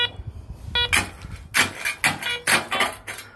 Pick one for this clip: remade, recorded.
recorded